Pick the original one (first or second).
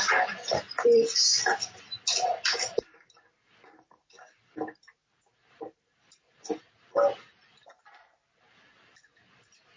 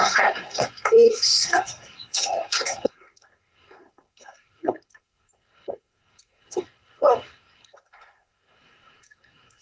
first